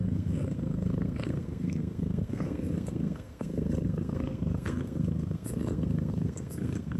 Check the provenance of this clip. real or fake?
fake